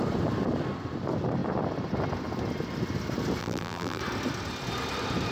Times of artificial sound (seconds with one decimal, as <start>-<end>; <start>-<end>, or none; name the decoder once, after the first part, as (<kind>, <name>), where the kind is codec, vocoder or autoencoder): 3.4-4.0 (vocoder, BigVGAN v2)